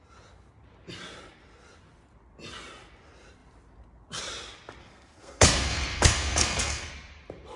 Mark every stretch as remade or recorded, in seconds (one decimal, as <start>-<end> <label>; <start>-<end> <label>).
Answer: 0.0-4.8 recorded; 4.8-6.9 remade; 6.9-7.6 recorded

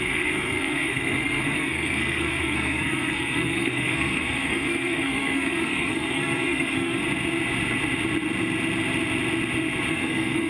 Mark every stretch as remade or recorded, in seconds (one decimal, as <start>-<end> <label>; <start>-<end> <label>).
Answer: 0.0-7.0 remade; 7.0-9.9 recorded; 9.9-10.5 remade

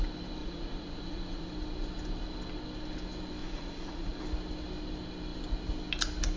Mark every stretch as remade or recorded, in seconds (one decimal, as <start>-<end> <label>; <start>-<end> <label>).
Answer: 0.0-0.4 recorded; 0.4-1.5 remade; 1.5-3.4 recorded; 3.4-4.2 remade; 4.2-6.4 recorded

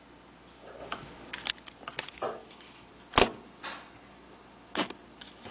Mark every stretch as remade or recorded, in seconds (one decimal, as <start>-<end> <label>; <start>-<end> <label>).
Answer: 0.0-2.4 recorded; 2.4-2.9 remade; 2.9-5.5 recorded